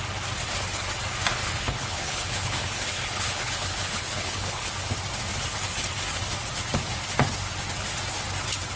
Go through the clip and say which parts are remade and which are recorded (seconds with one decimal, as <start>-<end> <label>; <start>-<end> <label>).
0.0-1.3 recorded; 1.3-4.7 remade; 4.7-8.8 recorded